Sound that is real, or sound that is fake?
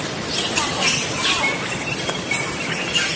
real